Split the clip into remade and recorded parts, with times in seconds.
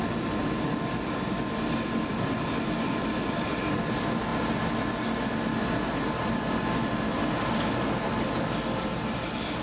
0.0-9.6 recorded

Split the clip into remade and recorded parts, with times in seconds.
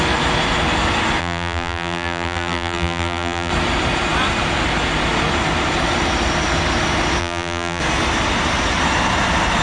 0.0-1.2 recorded; 1.2-3.5 remade; 3.5-7.2 recorded; 7.2-7.8 remade; 7.8-9.6 recorded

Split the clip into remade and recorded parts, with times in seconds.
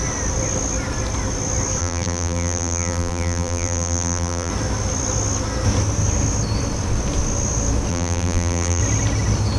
0.0-1.8 recorded; 1.8-4.5 remade; 4.5-7.9 recorded; 7.9-8.8 remade; 8.8-9.6 recorded